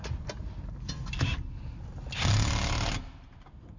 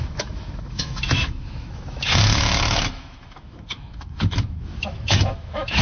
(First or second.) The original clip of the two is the first